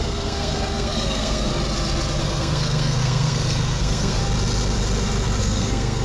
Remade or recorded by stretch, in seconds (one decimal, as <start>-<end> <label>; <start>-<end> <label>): 0.0-1.5 remade; 1.5-2.2 recorded; 2.2-4.2 remade; 4.2-5.4 recorded; 5.4-6.0 remade